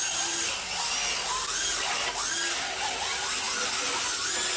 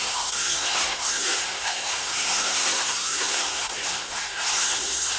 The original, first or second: first